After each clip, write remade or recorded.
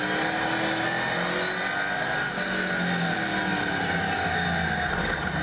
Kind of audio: recorded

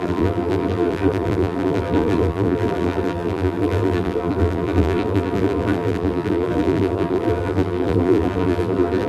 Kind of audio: remade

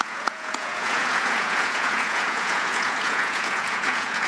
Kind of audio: remade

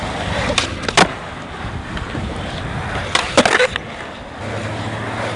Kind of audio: recorded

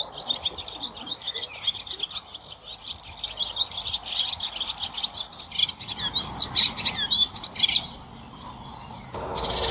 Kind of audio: recorded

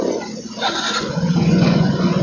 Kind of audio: remade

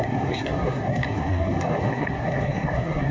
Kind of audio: remade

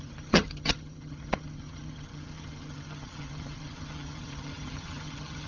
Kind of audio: remade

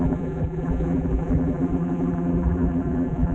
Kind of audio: remade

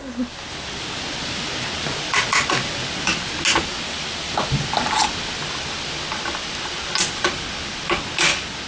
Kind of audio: recorded